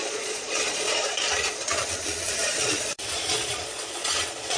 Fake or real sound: fake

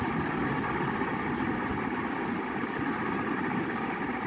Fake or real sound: real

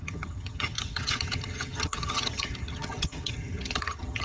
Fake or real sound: fake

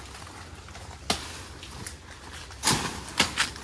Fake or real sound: real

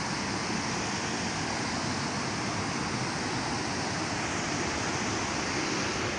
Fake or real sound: real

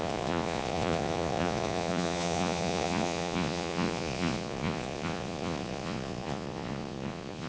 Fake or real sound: fake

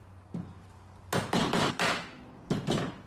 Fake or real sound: real